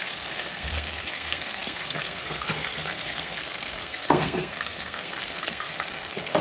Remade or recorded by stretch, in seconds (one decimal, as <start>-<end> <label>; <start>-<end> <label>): 0.0-6.4 remade